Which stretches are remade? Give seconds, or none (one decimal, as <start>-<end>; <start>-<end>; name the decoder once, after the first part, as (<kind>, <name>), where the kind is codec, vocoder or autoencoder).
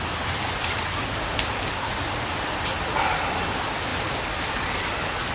none